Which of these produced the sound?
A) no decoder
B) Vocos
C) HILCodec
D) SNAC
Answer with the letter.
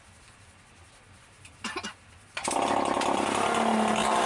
A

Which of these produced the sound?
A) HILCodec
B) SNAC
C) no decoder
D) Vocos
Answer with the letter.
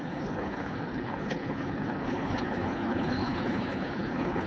A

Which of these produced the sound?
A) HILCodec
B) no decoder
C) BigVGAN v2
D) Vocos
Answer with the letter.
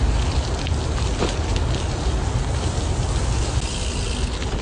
B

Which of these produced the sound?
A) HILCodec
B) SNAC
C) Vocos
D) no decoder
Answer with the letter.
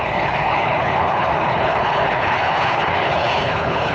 A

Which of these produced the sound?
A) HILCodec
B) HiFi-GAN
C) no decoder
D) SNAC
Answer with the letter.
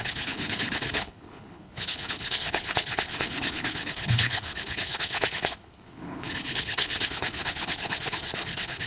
A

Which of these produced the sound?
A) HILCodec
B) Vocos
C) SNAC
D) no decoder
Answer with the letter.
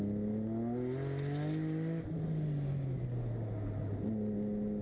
D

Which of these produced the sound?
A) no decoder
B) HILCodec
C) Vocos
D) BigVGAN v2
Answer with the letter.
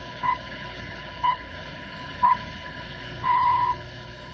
B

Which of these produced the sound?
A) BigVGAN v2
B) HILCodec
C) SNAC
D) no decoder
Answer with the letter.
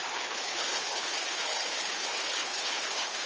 B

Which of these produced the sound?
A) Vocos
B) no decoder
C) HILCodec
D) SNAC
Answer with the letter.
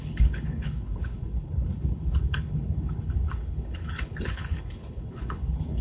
C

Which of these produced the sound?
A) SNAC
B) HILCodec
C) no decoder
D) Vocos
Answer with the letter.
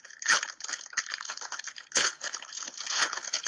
B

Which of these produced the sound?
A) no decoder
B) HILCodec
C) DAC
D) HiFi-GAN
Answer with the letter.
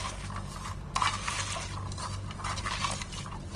A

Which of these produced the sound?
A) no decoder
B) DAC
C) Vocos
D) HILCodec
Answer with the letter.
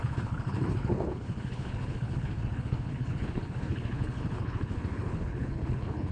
D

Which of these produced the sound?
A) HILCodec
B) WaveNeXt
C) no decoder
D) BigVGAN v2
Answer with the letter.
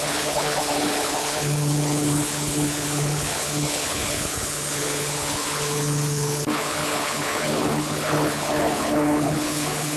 A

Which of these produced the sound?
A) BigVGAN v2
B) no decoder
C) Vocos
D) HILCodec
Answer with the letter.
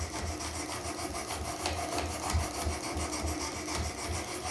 B